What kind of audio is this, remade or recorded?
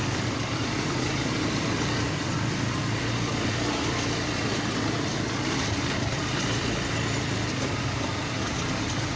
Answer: remade